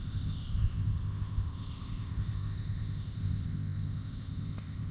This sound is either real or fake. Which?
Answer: fake